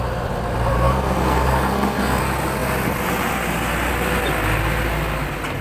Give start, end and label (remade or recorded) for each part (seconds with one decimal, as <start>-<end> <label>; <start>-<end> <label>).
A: 0.0-0.7 recorded; 0.7-2.2 remade; 2.2-5.6 recorded